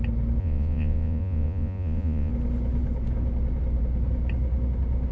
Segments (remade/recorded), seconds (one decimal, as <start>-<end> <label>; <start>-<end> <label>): 0.0-0.4 recorded; 0.4-2.3 remade; 2.3-5.1 recorded